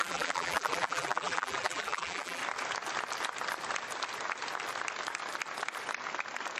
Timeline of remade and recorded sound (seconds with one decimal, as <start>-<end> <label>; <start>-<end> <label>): 0.0-2.4 remade; 2.4-6.6 recorded